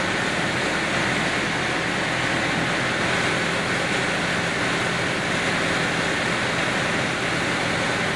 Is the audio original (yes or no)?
yes